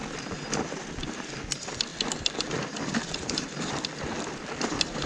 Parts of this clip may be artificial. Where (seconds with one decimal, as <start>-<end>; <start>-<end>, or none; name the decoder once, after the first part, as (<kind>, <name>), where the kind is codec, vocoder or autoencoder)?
0.0-1.0 (vocoder, BigVGAN v2); 1.9-5.1